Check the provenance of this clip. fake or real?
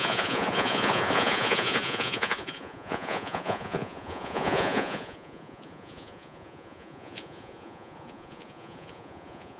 fake